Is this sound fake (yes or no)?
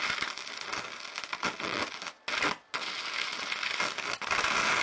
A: no